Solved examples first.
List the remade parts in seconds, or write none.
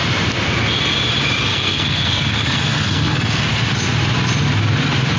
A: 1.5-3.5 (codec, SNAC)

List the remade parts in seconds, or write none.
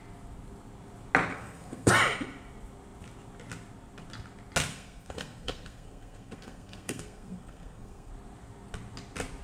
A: 1.3-1.9 (codec, SNAC); 4.7-8.1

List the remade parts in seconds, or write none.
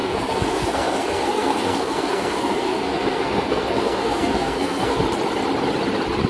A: 0.0-5.0 (codec, SNAC)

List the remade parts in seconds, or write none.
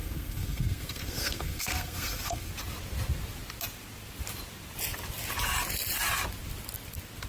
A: 0.0-2.5 (codec, SNAC)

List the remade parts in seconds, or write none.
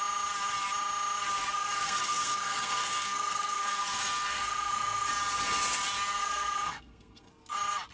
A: 1.4-5.1 (codec, SNAC); 6.2-7.3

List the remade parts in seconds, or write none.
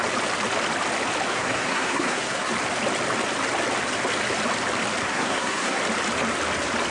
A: 1.3-2.5 (codec, SNAC); 5.0-5.8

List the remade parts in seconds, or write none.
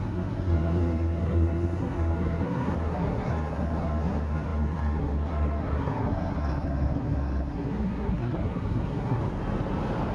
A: 0.0-9.2 (codec, SNAC)